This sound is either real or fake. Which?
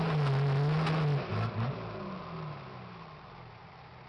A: real